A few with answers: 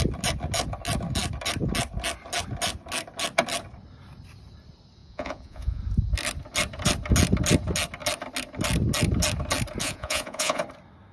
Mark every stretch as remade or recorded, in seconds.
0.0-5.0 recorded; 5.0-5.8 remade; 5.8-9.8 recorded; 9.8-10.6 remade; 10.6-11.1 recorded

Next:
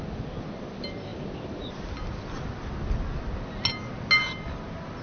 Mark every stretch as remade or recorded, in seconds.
0.0-5.0 recorded

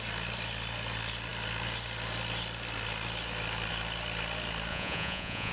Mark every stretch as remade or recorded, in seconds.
0.0-4.7 recorded; 4.7-5.5 remade

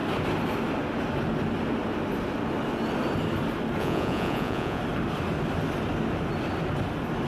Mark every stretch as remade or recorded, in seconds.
0.0-3.8 recorded; 3.8-4.8 remade; 4.8-7.3 recorded

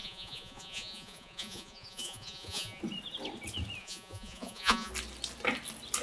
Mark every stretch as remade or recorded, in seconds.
0.0-2.8 remade; 2.8-3.8 recorded; 3.8-4.9 remade; 4.9-6.0 recorded

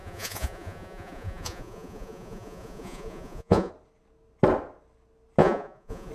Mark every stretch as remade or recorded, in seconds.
0.0-3.7 remade; 3.7-5.4 recorded; 5.4-6.1 remade

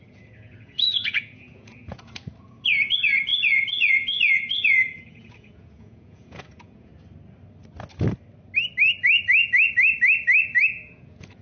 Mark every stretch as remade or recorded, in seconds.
0.0-6.9 remade; 6.9-10.7 recorded; 10.7-11.4 remade